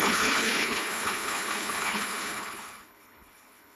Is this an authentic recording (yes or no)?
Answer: no